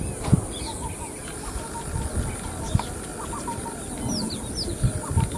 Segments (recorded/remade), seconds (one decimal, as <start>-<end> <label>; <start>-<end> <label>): 0.0-5.4 recorded